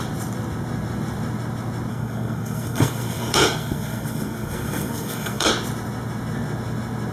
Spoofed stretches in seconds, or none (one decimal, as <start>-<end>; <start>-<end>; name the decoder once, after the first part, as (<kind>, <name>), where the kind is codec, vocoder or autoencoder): 1.9-5.5 (codec, SNAC)